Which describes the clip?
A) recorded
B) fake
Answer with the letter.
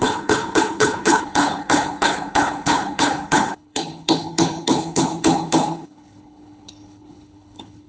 B